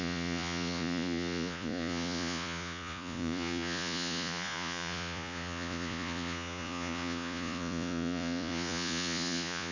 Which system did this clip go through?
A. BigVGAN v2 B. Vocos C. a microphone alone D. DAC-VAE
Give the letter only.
B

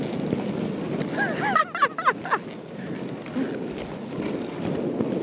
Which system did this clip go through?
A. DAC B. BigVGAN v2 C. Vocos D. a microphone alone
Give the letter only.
D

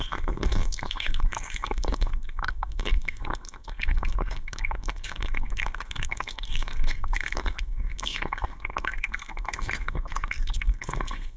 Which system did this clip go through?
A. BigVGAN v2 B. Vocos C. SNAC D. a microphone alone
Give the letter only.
C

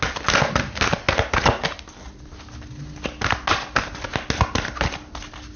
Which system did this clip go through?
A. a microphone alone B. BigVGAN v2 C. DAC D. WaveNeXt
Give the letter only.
A